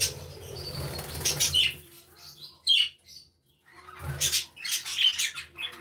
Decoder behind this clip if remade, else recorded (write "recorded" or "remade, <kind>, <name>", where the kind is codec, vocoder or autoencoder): recorded